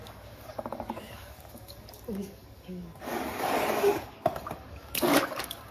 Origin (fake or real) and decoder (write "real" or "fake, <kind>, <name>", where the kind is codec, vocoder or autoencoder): fake, codec, DAC